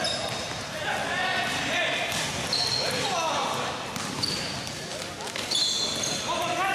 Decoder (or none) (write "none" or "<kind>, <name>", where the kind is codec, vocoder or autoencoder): none